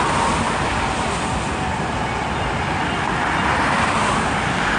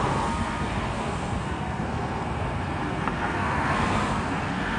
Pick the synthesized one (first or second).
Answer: second